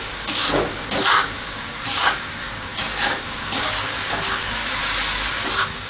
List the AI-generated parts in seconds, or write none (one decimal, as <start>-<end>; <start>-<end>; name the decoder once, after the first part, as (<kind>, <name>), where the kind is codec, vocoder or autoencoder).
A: 0.0-4.6 (codec, DAC); 5.5-5.9